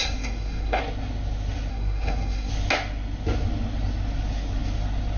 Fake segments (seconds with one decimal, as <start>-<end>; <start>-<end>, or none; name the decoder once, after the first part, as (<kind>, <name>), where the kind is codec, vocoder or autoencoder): 0.0-0.8 (codec, SNAC); 1.7-2.5